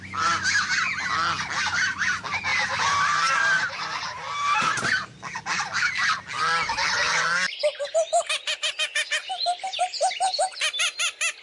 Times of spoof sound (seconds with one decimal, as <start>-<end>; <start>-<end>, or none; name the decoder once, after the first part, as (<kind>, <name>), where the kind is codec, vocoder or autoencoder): 2.5-4.8 (vocoder, BigVGAN v2)